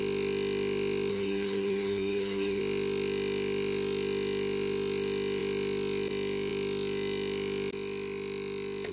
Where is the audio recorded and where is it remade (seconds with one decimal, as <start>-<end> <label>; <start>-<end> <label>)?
0.0-1.1 recorded; 1.1-2.6 remade; 2.6-8.9 recorded